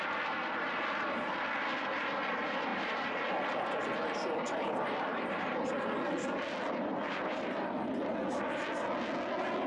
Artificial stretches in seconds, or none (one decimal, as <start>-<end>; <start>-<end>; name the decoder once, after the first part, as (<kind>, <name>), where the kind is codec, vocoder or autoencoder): 2.7-3.2 (vocoder, BigVGAN v2); 5.1-5.7; 6.9-7.6